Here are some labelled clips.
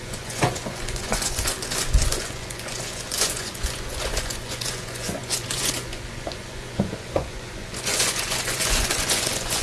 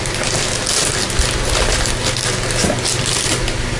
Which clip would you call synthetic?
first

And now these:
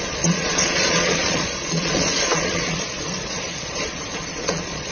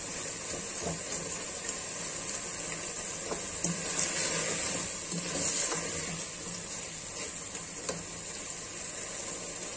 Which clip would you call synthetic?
first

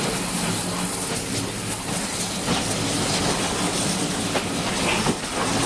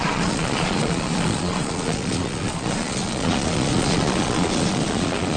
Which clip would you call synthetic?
second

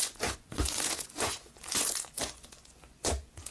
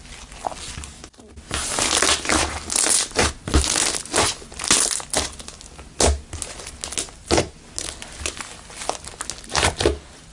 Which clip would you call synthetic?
first